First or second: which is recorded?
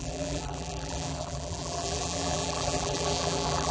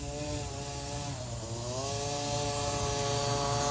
second